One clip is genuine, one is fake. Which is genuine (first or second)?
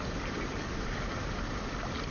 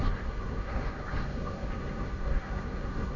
first